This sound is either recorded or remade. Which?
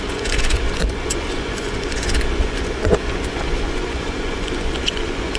remade